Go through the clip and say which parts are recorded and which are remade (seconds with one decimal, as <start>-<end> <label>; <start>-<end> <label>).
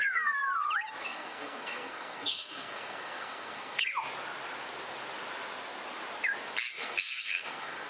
0.0-0.4 remade; 0.4-1.0 recorded; 1.0-3.9 remade; 3.9-6.7 recorded; 6.7-7.9 remade